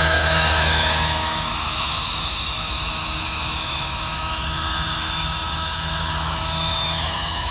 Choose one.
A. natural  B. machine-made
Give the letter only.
B